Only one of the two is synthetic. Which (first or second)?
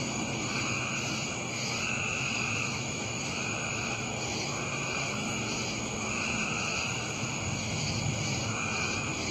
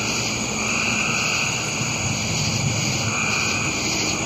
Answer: first